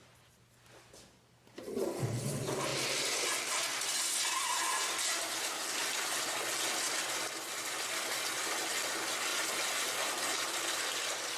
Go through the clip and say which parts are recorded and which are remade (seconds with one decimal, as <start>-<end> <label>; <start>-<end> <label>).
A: 0.0-11.4 recorded